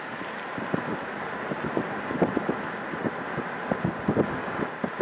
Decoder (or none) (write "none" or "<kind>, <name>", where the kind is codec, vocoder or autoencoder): none